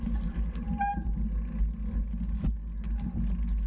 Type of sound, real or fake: real